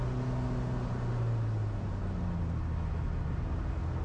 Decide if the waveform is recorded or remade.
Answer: recorded